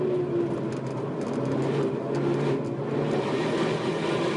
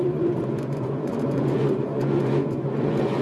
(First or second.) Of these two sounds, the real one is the first